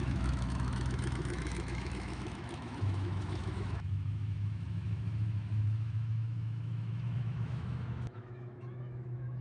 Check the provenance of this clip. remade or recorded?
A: remade